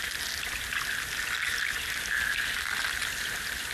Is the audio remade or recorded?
recorded